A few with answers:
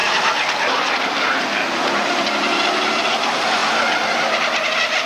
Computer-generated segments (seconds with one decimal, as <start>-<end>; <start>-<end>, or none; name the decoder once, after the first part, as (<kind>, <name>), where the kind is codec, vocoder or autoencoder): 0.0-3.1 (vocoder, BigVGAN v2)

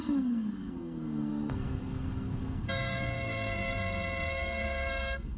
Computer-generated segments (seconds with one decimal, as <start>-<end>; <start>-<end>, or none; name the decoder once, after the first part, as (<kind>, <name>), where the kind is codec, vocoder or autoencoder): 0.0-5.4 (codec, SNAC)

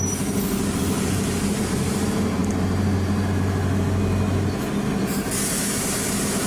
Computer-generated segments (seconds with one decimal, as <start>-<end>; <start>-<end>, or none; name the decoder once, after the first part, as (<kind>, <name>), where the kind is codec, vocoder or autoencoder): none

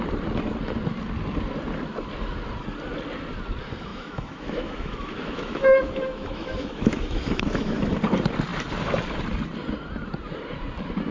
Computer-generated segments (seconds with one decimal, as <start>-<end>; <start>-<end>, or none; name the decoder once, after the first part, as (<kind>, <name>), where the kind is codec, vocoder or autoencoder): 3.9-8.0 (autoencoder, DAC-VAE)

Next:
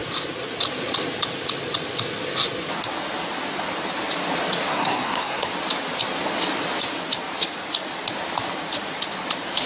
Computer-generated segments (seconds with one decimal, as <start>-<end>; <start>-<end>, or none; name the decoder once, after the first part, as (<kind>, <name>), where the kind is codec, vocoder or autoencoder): 4.7-5.5 (codec, SNAC)